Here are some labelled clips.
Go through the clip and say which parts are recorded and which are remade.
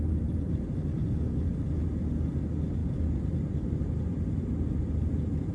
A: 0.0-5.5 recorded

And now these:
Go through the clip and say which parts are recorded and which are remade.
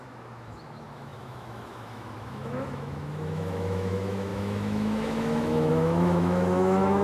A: 0.0-7.0 remade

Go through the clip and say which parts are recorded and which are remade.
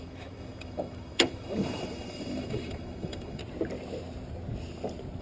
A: 0.0-3.4 remade; 3.4-5.2 recorded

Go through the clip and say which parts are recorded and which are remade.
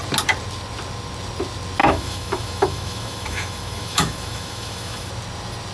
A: 0.0-1.8 recorded; 1.8-5.1 remade; 5.1-5.7 recorded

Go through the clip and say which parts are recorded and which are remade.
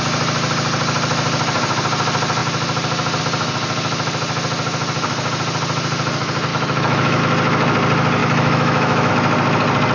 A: 0.0-6.5 recorded; 6.5-7.2 remade; 7.2-8.2 recorded; 8.2-9.1 remade; 9.1-9.9 recorded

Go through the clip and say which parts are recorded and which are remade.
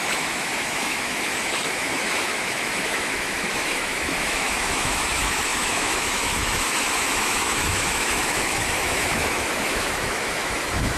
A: 0.0-11.0 remade